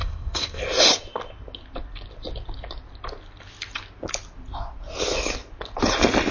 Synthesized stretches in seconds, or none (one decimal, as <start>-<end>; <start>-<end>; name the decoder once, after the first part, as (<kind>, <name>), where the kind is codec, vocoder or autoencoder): 0.0-0.6 (codec, ZipCodec)